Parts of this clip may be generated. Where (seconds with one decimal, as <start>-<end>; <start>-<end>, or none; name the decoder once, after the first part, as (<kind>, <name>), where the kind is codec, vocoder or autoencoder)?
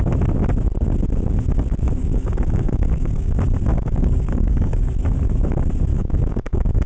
2.0-3.3 (codec, DAC); 3.7-4.9; 5.9-6.9